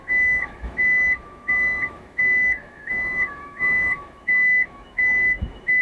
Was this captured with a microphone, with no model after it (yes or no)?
no